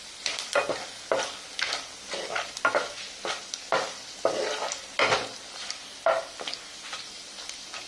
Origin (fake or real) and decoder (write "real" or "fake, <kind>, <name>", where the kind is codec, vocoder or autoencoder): real